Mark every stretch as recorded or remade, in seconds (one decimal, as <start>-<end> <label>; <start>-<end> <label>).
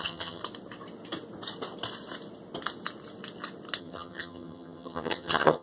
0.0-0.4 remade; 0.4-3.8 recorded; 3.8-5.6 remade